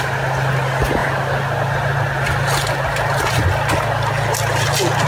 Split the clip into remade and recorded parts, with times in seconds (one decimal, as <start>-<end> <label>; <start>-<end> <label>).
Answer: 0.0-5.1 recorded